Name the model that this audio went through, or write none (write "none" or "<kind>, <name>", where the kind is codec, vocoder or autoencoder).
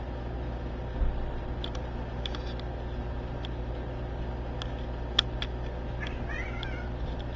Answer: none